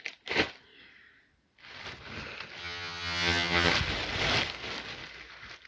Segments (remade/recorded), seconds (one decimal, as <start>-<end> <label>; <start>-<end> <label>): 0.0-2.6 recorded; 2.6-3.7 remade; 3.7-5.7 recorded